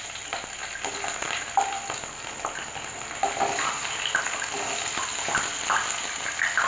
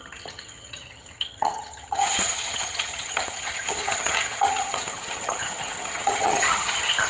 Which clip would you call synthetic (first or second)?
second